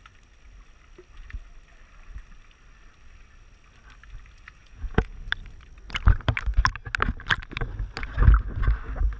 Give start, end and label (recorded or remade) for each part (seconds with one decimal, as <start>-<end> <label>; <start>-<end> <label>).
0.0-4.6 recorded; 4.6-5.2 remade; 5.2-9.2 recorded

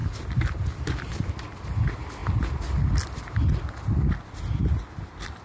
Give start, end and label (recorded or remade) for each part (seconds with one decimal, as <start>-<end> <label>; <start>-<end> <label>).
0.0-1.3 remade; 1.3-5.4 recorded

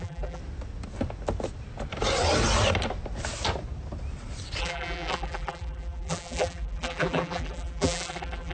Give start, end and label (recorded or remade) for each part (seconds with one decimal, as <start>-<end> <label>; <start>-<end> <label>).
0.0-0.4 remade; 0.4-4.6 recorded; 4.6-8.5 remade

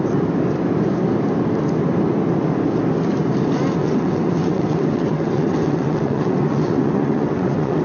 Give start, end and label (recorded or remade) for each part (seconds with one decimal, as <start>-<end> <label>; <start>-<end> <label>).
0.0-3.8 recorded; 3.8-7.8 remade

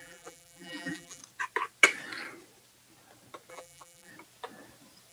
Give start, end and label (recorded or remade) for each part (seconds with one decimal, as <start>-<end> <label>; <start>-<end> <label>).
0.0-1.2 remade; 1.2-3.5 recorded; 3.5-4.1 remade; 4.1-5.1 recorded